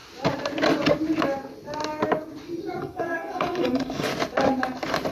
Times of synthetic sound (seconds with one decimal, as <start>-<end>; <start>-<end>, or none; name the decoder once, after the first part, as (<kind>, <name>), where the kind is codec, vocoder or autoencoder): 2.8-4.1 (codec, DAC)